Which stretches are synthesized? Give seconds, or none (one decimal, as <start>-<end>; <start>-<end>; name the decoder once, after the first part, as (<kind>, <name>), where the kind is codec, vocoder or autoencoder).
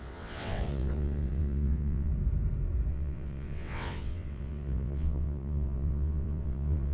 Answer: 0.0-2.1 (vocoder, WaveNeXt); 2.9-6.9